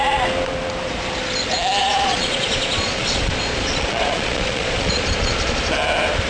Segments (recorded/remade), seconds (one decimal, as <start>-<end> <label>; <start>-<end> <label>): 0.0-1.8 recorded; 1.8-5.6 remade; 5.6-6.3 recorded